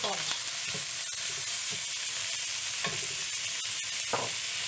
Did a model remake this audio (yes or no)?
no